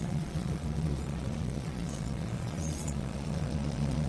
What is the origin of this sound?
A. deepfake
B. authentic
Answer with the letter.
A